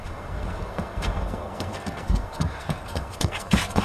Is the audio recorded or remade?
remade